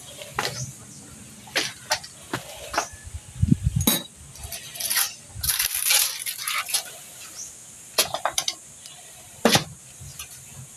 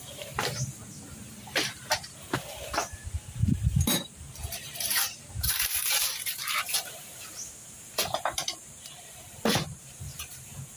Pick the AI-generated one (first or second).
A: second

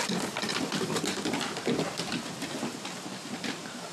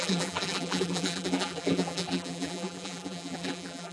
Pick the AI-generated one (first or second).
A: second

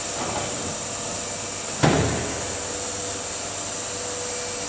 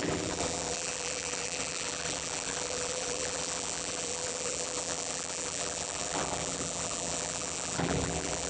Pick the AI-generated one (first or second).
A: second